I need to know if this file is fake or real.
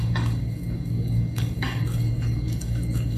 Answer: fake